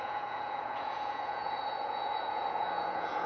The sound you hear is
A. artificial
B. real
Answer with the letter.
A